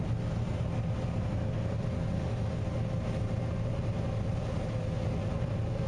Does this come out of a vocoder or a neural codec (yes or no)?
no